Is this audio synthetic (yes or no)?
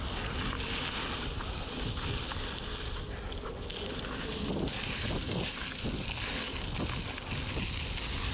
no